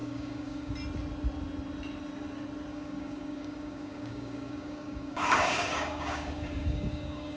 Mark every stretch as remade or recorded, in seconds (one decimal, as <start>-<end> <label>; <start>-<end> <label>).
0.0-0.7 remade; 0.7-2.7 recorded; 2.7-7.4 remade